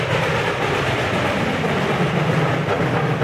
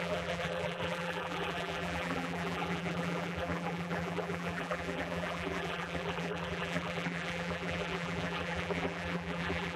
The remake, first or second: second